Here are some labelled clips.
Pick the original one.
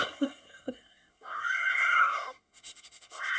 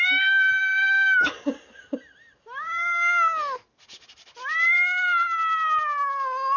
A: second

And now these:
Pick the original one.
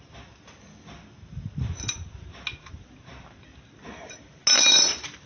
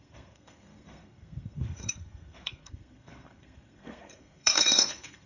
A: first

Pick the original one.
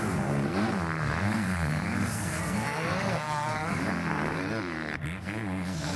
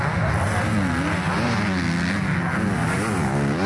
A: second